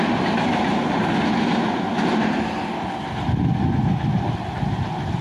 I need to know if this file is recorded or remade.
recorded